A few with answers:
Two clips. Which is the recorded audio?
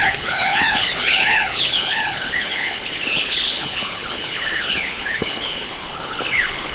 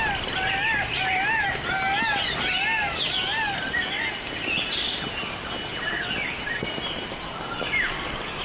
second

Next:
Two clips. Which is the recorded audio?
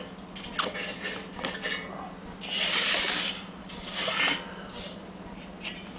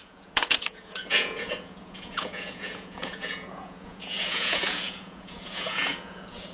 first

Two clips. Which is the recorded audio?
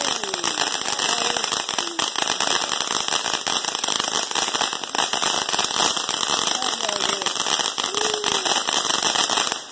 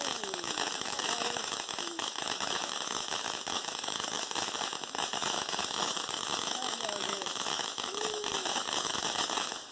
first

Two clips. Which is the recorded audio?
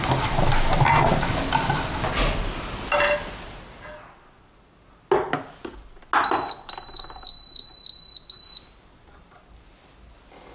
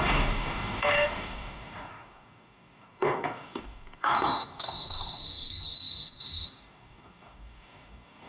first